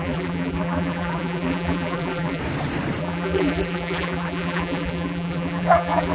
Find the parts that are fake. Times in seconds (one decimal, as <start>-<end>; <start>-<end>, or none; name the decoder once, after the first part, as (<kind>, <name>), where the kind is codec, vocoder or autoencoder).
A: 0.0-2.4 (vocoder, BigVGAN v2); 3.0-6.1